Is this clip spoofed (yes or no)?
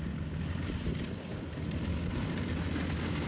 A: no